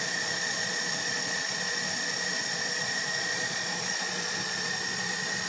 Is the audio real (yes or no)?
no